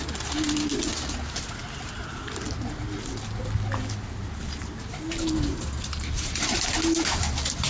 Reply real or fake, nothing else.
real